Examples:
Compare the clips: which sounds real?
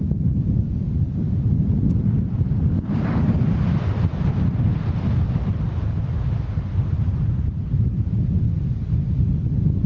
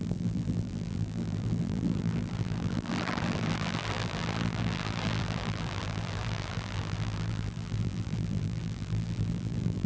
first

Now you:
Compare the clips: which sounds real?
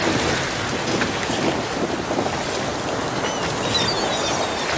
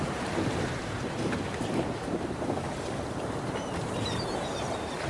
first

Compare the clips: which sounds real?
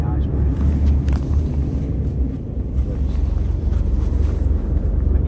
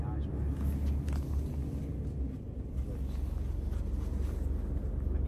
second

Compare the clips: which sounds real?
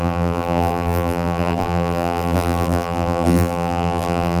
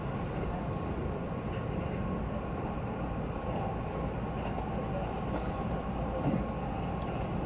second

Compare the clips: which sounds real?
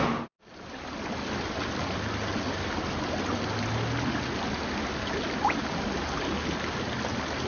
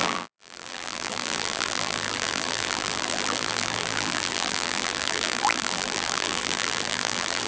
first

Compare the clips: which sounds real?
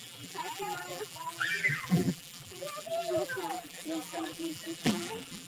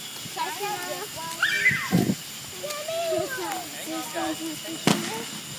second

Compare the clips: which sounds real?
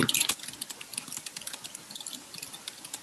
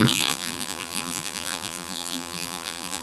first